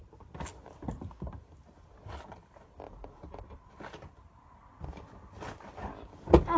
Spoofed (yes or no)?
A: no